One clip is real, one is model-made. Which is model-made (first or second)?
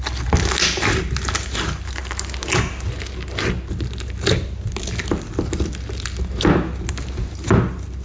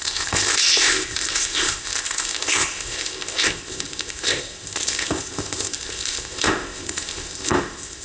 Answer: second